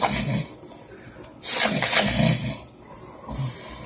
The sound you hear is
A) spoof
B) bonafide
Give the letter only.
B